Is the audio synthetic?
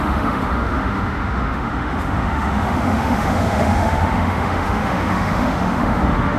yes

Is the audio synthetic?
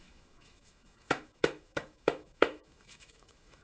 yes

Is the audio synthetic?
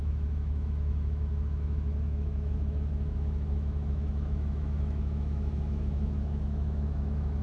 yes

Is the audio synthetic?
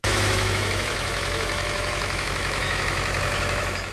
yes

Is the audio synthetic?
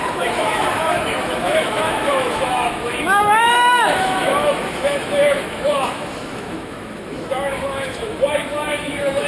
yes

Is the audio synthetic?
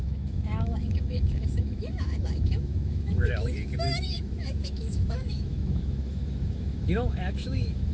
yes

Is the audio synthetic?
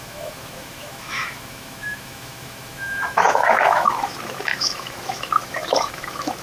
yes